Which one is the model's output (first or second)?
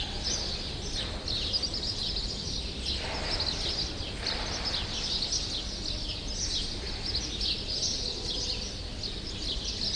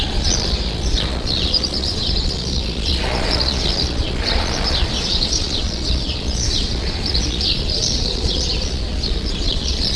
second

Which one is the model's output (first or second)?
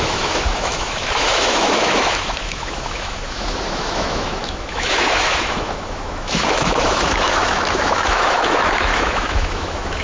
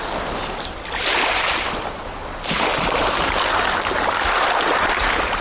first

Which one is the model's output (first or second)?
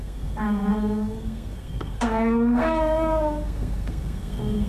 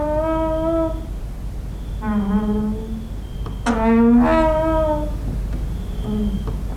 first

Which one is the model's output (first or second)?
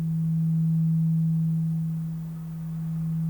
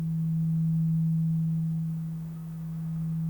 second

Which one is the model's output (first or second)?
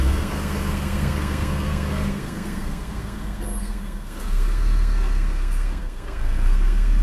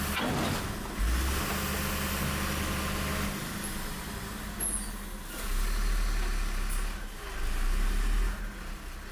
first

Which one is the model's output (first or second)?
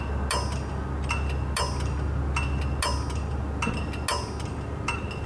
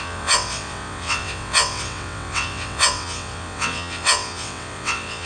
second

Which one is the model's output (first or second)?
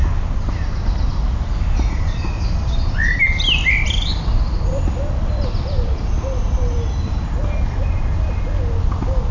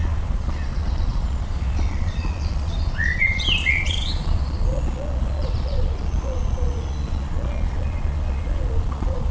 second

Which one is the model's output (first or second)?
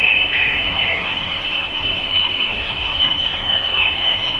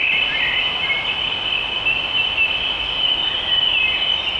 first